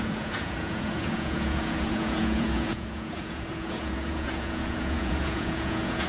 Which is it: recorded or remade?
remade